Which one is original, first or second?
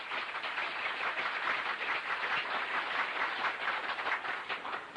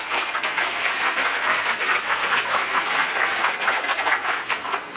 first